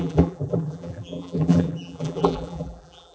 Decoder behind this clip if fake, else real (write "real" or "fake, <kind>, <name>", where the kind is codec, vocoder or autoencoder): fake, vocoder, BigVGAN v2